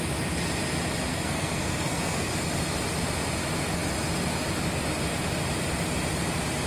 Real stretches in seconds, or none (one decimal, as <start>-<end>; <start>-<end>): 0.0-1.1; 2.3-6.7